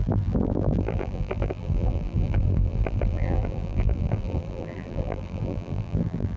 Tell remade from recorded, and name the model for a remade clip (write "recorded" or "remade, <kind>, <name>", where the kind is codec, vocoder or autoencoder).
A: remade, vocoder, BigVGAN v2